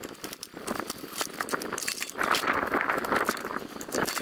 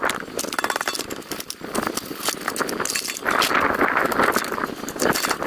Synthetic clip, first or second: first